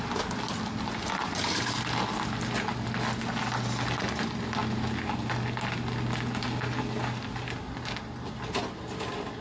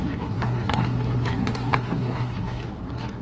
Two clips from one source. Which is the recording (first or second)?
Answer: first